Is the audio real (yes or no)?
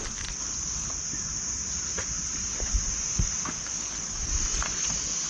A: yes